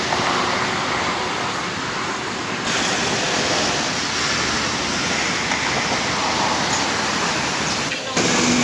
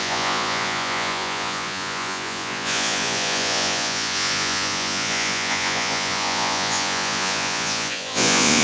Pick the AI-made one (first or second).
second